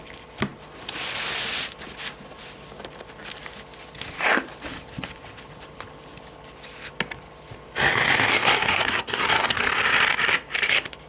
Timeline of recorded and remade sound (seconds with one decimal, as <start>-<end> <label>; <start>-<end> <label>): 0.0-8.3 recorded; 8.3-9.7 remade; 9.7-11.1 recorded